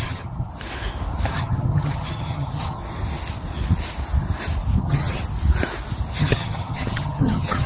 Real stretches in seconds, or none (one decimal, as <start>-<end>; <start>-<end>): 0.5-1.3; 2.8-4.8; 5.2-6.2